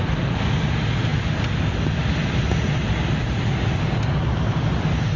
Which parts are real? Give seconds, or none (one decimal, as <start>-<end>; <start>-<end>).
0.0-5.2